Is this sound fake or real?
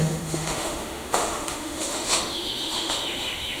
fake